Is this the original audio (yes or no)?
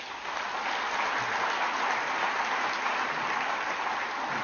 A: yes